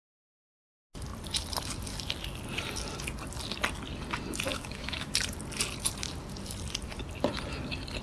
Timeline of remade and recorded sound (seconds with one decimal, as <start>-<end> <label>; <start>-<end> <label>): 0.0-4.5 recorded; 4.5-5.1 remade; 5.1-8.0 recorded